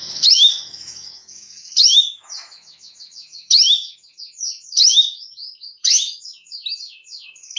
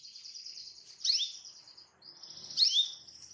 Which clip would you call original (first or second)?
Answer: second